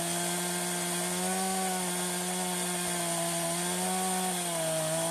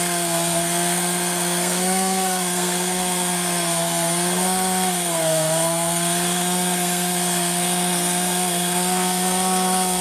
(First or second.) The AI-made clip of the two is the second